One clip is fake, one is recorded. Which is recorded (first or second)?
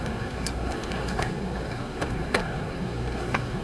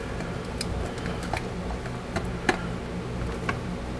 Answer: second